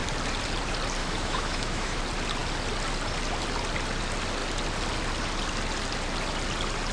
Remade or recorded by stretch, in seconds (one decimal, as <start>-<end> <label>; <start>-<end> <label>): 0.0-1.0 recorded; 1.0-2.0 remade; 2.0-6.9 recorded